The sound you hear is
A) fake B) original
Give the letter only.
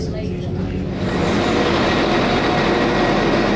B